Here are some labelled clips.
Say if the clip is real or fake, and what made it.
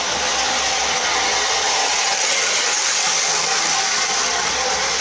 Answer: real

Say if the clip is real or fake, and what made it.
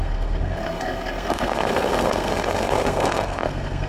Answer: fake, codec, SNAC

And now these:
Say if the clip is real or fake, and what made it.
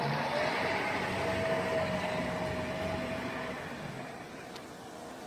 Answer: real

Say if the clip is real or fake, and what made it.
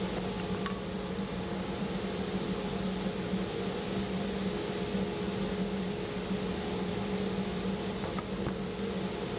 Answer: real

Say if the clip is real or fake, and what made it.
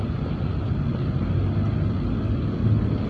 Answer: real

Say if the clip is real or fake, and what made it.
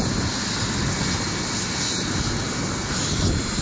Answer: real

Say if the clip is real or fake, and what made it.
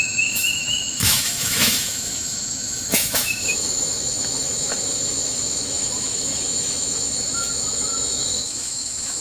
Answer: fake, autoencoder, DAC-VAE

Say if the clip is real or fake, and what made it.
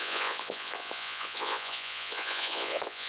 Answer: fake, vocoder, Vocos